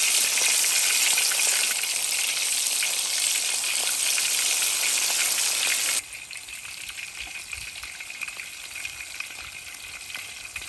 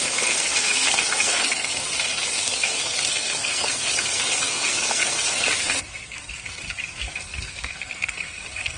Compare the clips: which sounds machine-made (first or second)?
second